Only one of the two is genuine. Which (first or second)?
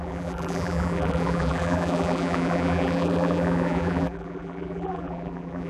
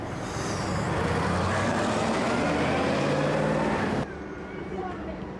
second